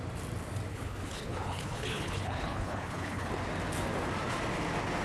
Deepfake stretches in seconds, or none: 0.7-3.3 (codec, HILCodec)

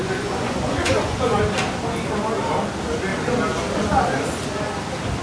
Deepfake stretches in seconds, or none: 0.0-1.4 (vocoder, Vocos)

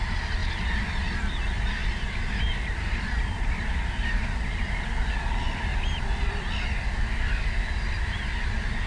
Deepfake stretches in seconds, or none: 0.4-1.2 (vocoder, BigVGAN v2); 1.8-3.6; 5.7-6.6